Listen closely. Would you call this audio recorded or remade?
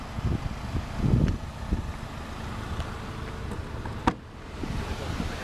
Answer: recorded